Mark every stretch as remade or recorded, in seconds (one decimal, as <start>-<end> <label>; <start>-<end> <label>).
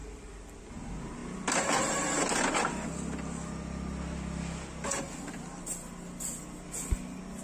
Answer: 0.0-7.4 recorded